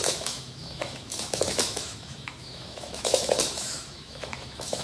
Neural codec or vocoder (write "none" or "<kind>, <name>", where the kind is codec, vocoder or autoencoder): autoencoder, DAC-VAE